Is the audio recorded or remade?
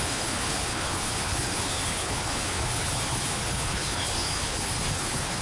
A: remade